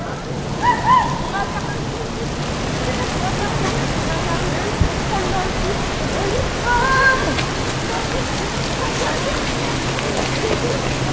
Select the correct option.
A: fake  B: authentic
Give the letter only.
B